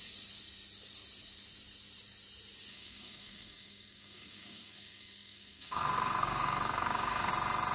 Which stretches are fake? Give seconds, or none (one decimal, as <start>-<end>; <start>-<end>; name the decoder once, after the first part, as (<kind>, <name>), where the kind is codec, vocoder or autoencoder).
2.7-7.3 (codec, SNAC)